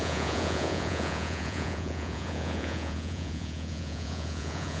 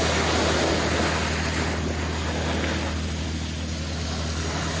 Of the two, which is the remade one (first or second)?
first